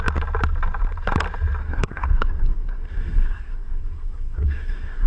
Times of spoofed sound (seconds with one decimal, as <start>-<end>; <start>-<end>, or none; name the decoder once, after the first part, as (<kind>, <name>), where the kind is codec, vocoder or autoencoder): 1.6-5.1 (codec, SNAC)